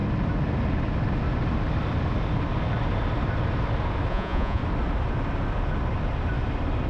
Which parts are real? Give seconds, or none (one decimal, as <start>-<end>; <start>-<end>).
0.0-4.1; 4.6-6.9